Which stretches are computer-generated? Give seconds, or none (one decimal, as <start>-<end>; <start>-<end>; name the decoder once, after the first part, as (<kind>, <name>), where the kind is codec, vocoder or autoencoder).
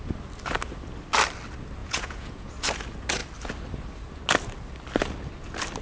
1.8-2.5 (vocoder, Vocos)